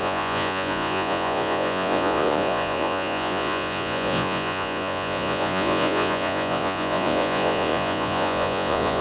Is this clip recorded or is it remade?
remade